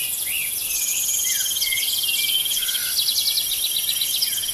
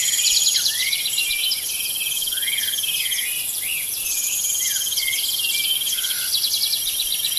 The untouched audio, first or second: first